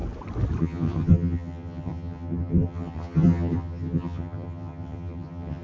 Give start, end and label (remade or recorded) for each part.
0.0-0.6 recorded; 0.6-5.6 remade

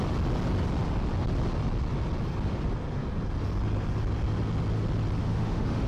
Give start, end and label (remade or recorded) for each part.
0.0-5.2 recorded; 5.2-5.9 remade

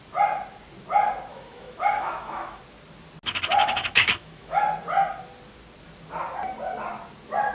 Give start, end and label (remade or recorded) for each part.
0.0-1.3 recorded; 1.3-2.6 remade; 2.6-3.6 recorded; 3.6-4.6 remade; 4.6-7.5 recorded